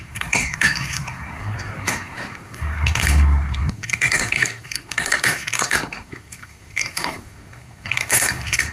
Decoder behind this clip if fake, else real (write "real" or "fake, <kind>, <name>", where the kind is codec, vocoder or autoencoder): fake, codec, SNAC